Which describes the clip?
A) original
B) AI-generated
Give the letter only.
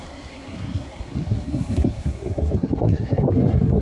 B